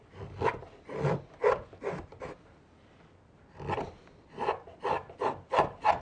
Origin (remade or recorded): recorded